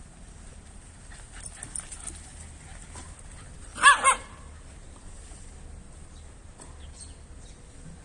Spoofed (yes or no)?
no